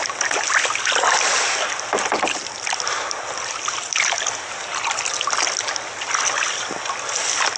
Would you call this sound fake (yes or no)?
no